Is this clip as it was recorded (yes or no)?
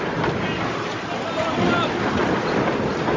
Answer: yes